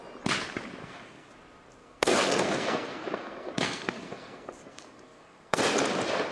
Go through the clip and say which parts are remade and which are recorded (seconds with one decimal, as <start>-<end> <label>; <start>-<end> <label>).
0.0-0.8 recorded; 0.8-1.3 remade; 1.3-1.8 recorded; 1.8-5.6 remade; 5.6-6.3 recorded

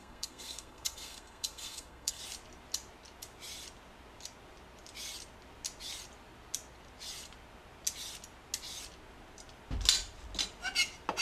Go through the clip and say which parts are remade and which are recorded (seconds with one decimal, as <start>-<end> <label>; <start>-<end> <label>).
0.0-2.2 remade; 2.2-11.2 recorded